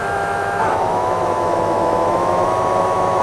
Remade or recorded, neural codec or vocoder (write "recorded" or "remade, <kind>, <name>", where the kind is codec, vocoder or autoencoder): remade, autoencoder, DAC-VAE